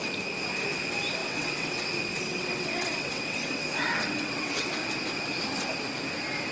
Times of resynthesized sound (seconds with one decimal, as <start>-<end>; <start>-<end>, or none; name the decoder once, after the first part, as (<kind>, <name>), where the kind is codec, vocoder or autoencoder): 1.2-1.9 (vocoder, WaveNeXt); 2.3-4.7